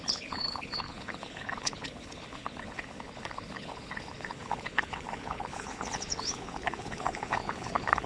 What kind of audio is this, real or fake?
fake